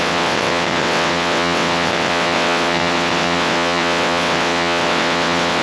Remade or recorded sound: remade